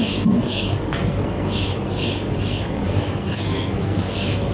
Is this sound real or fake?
fake